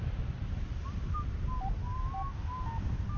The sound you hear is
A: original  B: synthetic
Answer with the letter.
A